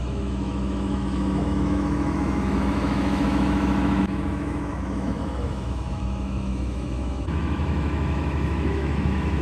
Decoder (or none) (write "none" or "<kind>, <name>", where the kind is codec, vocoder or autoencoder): autoencoder, DAC-VAE